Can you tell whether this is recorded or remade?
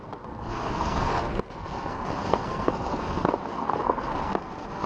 remade